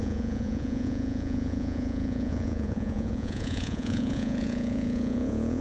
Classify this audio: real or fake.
fake